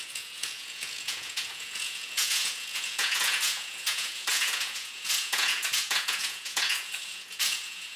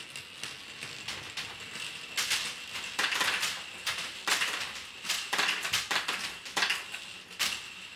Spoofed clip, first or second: first